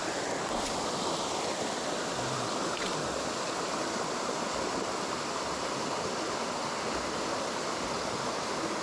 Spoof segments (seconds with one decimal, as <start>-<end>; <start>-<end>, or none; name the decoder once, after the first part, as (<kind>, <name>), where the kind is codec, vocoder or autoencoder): none